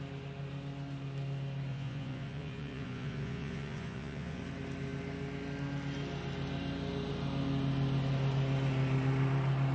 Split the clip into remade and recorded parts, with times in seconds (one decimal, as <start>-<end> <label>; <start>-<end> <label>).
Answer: 0.0-1.7 recorded; 1.7-4.4 remade; 4.4-9.7 recorded